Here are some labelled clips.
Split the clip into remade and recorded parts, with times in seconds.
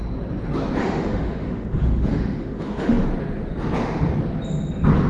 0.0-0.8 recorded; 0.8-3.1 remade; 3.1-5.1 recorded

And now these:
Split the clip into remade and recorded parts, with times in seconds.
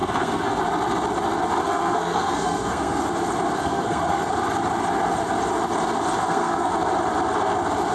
0.0-0.6 remade; 0.6-1.6 recorded; 1.6-3.0 remade; 3.0-3.6 recorded; 3.6-4.3 remade; 4.3-6.2 recorded; 6.2-6.7 remade; 6.7-7.9 recorded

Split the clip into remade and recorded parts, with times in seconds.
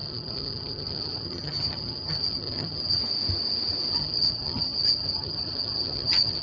0.0-3.0 remade; 3.0-3.9 recorded; 3.9-6.4 remade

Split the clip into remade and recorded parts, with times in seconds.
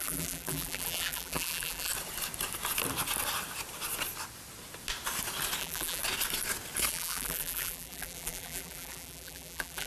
0.0-1.9 remade; 1.9-5.6 recorded; 5.6-6.0 remade; 6.0-6.9 recorded; 6.9-9.9 remade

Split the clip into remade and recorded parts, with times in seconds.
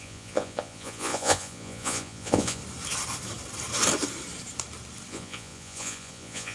0.0-2.6 remade; 2.6-5.1 recorded; 5.1-6.5 remade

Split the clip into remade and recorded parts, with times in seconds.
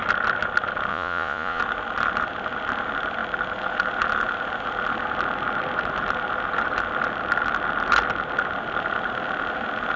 0.0-0.9 recorded; 0.9-1.6 remade; 1.6-10.0 recorded